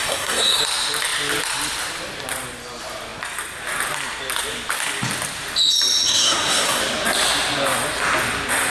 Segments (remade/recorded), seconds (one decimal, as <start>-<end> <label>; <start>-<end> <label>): 0.0-0.6 remade; 0.6-6.1 recorded; 6.1-6.8 remade; 6.8-8.7 recorded